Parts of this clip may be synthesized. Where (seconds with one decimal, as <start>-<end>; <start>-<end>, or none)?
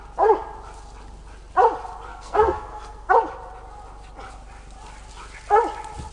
2.1-3.1